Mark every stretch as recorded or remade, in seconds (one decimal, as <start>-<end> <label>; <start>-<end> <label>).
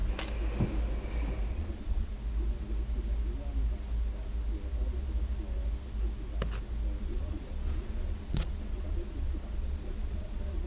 0.0-1.5 recorded; 1.5-2.1 remade; 2.1-7.0 recorded; 7.0-10.7 remade